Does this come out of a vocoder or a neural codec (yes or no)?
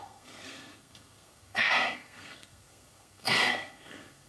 yes